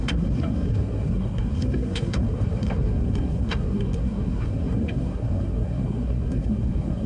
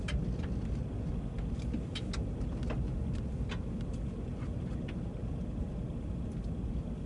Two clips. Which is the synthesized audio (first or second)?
first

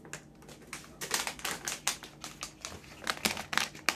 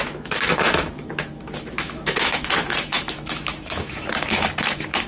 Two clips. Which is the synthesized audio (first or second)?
second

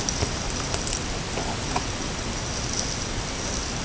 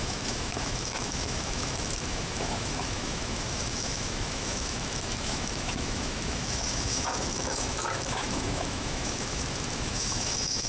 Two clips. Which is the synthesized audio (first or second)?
second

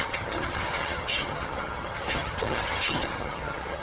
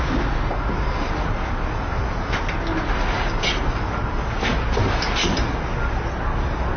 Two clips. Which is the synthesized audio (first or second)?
first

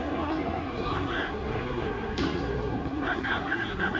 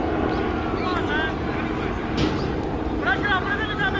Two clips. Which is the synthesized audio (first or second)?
first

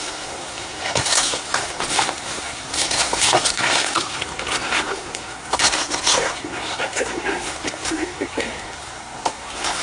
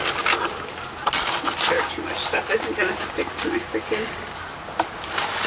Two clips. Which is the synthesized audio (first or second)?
first